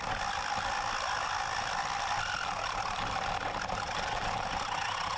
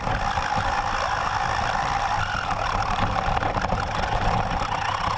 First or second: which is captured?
first